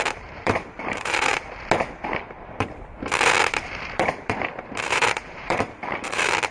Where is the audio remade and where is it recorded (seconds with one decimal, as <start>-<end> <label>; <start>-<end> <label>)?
0.0-1.3 remade; 1.3-2.2 recorded; 2.2-6.5 remade